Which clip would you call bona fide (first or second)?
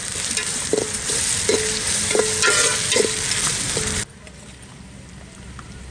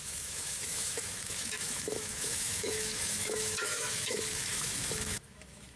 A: first